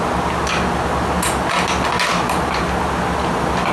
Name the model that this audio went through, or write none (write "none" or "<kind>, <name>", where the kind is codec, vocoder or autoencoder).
none